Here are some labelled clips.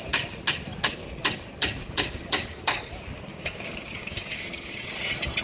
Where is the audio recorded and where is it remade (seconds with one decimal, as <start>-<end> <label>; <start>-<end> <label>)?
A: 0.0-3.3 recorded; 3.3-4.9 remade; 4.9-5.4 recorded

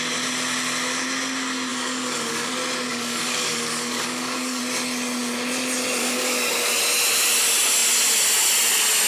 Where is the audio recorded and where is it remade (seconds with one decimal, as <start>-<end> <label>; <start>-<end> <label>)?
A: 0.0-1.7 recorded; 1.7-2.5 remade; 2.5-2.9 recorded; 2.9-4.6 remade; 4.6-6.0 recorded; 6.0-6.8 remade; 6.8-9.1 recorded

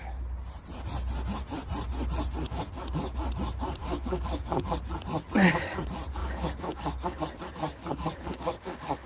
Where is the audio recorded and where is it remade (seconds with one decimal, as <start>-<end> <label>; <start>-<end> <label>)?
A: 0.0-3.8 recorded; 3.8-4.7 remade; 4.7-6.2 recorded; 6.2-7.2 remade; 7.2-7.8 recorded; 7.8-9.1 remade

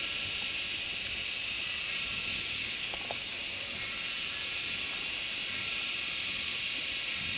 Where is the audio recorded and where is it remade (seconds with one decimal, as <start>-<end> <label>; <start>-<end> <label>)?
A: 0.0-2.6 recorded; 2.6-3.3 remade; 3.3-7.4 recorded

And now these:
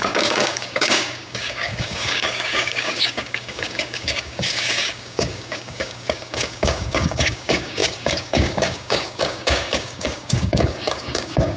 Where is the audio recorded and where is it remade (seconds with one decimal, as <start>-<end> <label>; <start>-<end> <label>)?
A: 0.0-11.6 remade

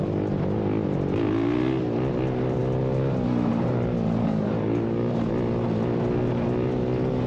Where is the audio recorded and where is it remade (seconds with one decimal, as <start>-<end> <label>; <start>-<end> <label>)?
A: 0.0-4.2 recorded; 4.2-5.0 remade; 5.0-7.3 recorded